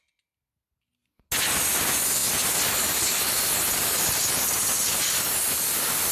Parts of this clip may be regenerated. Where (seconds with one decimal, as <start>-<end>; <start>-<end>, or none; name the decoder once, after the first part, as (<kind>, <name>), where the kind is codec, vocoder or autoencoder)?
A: none